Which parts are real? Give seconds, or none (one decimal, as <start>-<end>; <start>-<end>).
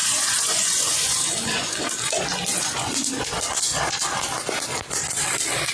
1.8-2.5; 3.1-5.7